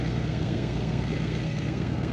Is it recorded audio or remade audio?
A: remade